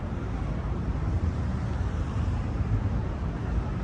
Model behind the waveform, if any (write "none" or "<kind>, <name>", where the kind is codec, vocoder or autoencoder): vocoder, BigVGAN v2